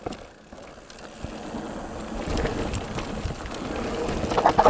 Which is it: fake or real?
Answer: real